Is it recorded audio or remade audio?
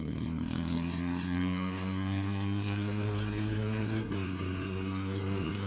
remade